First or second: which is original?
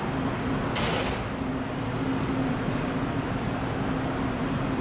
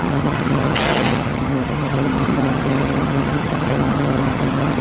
first